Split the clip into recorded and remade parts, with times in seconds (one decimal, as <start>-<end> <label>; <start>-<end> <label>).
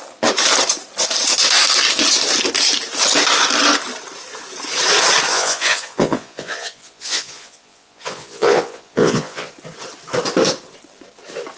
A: 0.0-5.3 recorded; 5.3-9.5 remade; 9.5-11.6 recorded